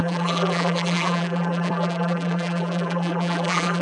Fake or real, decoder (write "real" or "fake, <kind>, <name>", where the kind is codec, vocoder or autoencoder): fake, vocoder, BigVGAN v2